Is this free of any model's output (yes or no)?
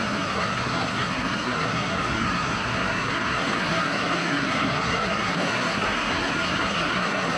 no